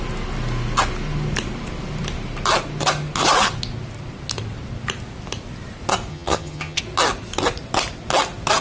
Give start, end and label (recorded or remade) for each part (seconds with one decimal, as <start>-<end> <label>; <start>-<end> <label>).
0.0-6.1 recorded; 6.1-6.8 remade; 6.8-8.6 recorded